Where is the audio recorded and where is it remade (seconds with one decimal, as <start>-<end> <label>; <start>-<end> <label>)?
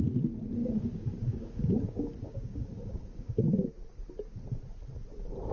0.0-0.6 recorded; 0.6-3.4 remade; 3.4-5.5 recorded